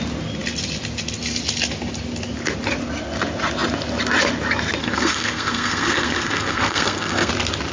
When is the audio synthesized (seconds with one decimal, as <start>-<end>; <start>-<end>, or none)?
4.8-7.3